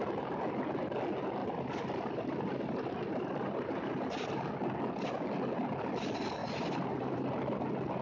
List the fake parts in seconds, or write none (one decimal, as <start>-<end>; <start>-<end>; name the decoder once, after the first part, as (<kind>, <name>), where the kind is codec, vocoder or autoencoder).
1.4-4.5 (vocoder, BigVGAN v2); 6.4-7.4